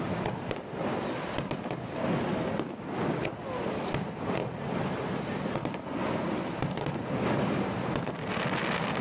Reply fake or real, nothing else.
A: real